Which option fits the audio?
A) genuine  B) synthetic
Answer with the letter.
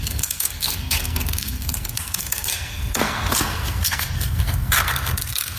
B